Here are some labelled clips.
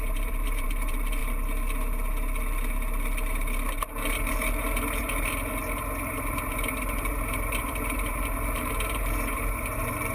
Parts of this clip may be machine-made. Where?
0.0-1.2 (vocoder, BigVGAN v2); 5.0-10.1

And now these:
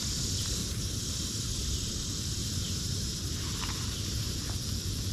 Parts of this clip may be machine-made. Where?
0.6-2.0 (vocoder, BigVGAN v2); 2.4-4.4

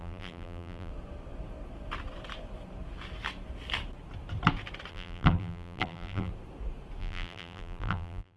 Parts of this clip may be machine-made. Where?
0.0-0.9 (vocoder, BigVGAN v2); 4.9-6.3; 7.0-8.4